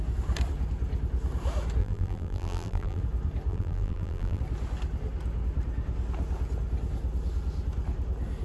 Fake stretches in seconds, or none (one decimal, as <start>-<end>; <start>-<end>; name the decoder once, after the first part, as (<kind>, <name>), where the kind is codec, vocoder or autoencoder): 1.8-3.0 (vocoder, BigVGAN v2); 3.5-4.4